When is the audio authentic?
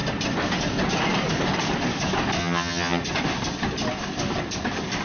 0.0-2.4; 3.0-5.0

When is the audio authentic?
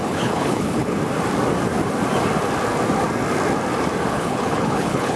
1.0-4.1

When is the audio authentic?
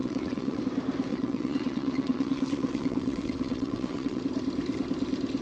0.6-1.1; 4.2-5.4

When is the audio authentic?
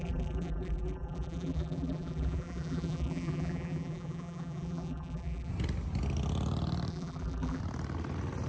5.5-6.9; 7.6-8.5